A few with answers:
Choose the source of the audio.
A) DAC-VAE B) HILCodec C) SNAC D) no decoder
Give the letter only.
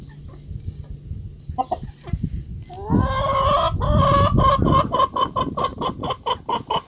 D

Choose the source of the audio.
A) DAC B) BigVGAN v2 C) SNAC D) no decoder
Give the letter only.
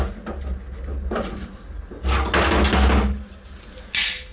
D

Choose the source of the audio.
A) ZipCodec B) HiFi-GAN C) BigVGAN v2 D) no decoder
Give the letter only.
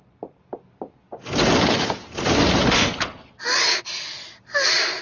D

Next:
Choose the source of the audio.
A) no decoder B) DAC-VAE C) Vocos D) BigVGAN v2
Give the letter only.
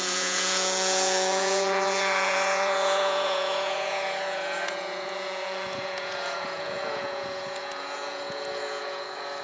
C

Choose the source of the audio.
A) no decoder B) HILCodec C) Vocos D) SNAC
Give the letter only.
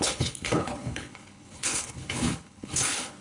B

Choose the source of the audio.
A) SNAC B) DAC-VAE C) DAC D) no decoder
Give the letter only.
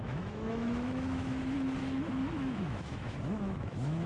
B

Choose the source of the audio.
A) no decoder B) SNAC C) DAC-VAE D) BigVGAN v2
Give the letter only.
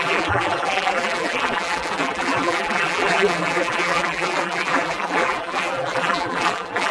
D